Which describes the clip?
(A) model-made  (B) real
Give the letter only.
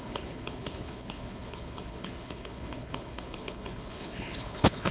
A